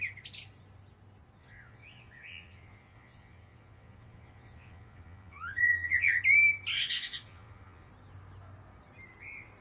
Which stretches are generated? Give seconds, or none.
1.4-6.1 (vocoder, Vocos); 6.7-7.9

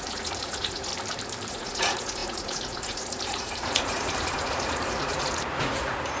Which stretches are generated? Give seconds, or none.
0.0-0.9 (vocoder, Vocos); 1.5-6.2

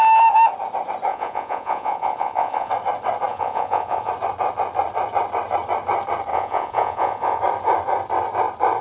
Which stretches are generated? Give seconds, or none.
1.1-2.7 (vocoder, Vocos); 3.3-4.1; 6.3-7.4